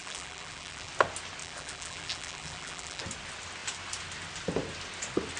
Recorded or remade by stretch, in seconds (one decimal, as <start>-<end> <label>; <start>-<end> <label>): 0.0-0.9 remade; 0.9-1.4 recorded; 1.4-3.0 remade; 3.0-5.4 recorded